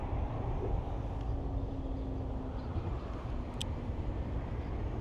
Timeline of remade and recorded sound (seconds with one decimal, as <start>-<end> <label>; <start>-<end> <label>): 0.0-5.0 recorded

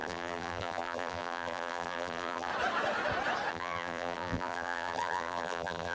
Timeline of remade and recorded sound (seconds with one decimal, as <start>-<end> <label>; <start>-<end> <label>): 0.0-2.5 remade; 2.5-3.5 recorded; 3.5-5.9 remade

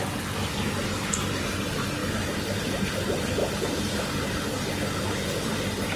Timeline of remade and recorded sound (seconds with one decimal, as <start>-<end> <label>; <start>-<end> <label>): 0.0-2.0 recorded; 2.0-2.9 remade; 2.9-3.4 recorded; 3.4-4.3 remade; 4.3-6.0 recorded

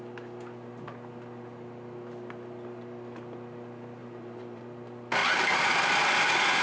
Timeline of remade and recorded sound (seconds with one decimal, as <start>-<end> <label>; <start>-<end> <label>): 0.0-4.0 recorded; 4.0-4.6 remade; 4.6-5.2 recorded; 5.2-5.9 remade; 5.9-6.6 recorded

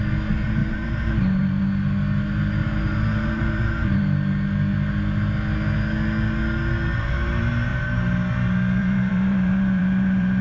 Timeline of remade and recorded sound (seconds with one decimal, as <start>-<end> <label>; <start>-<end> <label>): 0.0-0.6 recorded; 0.6-1.6 remade; 1.6-2.6 recorded; 2.6-4.0 remade; 4.0-8.8 recorded; 8.8-10.4 remade